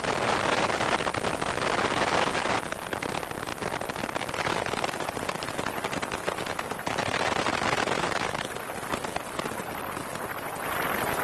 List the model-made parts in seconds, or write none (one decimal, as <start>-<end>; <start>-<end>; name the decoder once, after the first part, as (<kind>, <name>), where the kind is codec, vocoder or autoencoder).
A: none